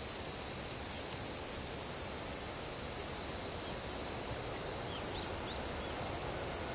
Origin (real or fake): real